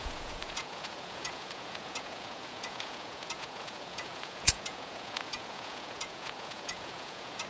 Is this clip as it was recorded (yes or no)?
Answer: no